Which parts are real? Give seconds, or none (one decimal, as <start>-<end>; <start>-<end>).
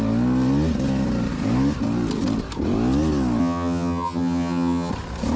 0.0-3.4; 4.9-5.4